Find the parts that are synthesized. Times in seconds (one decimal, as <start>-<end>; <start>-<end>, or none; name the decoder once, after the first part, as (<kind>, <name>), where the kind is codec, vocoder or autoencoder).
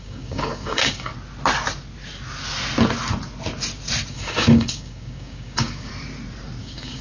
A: 0.0-1.1 (codec, DAC); 4.1-5.9; 6.6-7.0